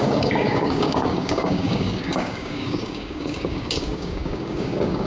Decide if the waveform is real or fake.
fake